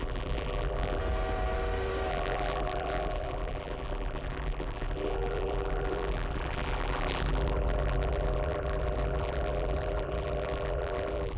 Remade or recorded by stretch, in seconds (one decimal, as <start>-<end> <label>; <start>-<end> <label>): 0.0-1.0 remade; 1.0-2.1 recorded; 2.1-11.4 remade